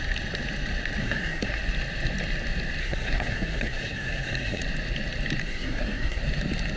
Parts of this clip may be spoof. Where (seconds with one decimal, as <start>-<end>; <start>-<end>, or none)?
1.0-1.6; 2.8-4.6; 5.4-6.2

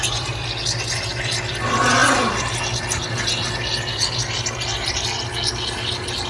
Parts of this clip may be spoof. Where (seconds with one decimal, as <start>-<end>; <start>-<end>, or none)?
none

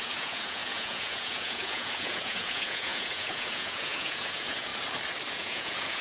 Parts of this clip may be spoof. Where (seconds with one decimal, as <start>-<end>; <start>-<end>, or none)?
0.0-4.7; 5.3-6.0

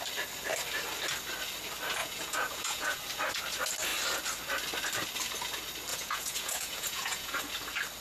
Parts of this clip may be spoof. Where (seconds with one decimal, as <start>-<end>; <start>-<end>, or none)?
2.0-3.0; 5.9-7.4

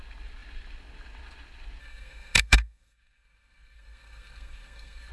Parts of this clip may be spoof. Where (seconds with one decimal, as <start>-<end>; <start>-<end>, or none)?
1.8-5.1

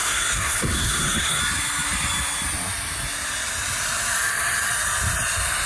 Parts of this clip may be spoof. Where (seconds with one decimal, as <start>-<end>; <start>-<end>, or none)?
0.0-1.4

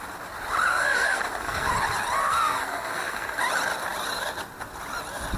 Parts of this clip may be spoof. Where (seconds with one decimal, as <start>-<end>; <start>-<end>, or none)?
0.7-1.7; 2.2-3.4

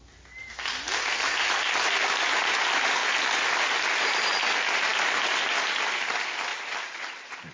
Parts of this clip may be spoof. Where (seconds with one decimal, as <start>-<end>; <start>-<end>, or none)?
6.5-7.5